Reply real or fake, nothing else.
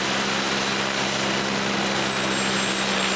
real